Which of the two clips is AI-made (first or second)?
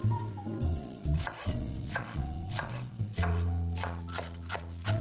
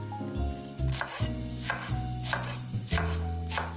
first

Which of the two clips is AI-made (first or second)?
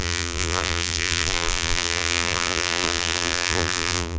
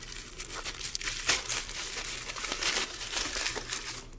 first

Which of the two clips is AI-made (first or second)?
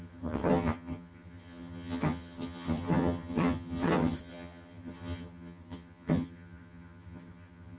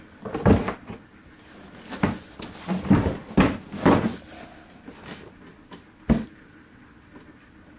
first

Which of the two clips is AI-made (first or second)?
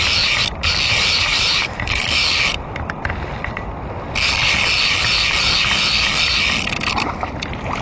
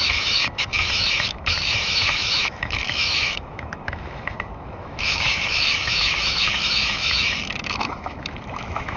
second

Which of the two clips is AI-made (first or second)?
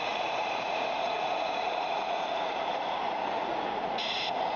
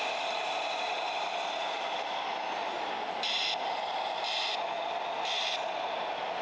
first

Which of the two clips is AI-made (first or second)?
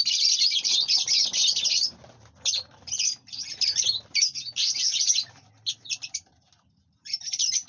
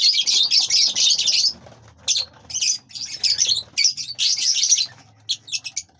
first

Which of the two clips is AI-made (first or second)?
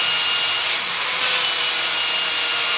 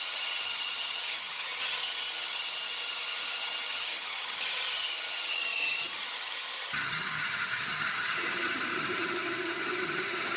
second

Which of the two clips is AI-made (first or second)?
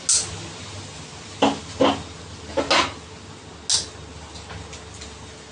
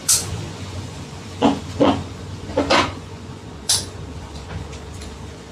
second